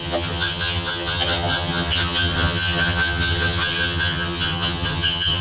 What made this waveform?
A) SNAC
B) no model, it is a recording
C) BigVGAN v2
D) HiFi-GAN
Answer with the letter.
D